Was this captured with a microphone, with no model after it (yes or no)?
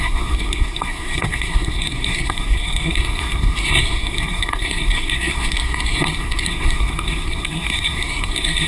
no